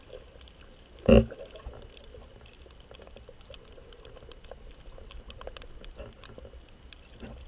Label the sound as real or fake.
real